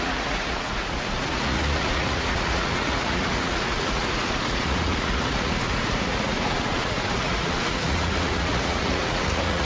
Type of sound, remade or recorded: remade